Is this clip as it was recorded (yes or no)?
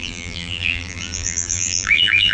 no